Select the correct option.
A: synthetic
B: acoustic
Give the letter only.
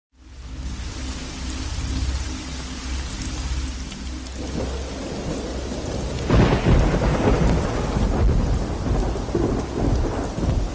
B